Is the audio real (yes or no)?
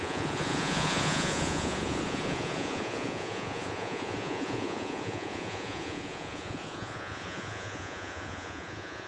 no